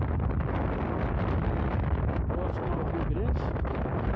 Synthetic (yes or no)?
no